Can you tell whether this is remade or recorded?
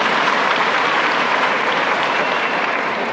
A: remade